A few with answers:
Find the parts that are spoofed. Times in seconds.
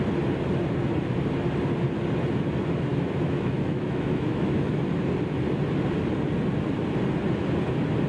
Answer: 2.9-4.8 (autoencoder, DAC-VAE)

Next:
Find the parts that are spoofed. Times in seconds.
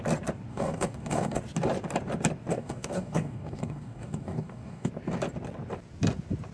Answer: 0.5-1.4 (codec, DAC); 2.5-4.9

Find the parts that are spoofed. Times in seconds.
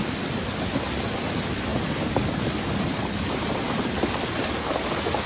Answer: none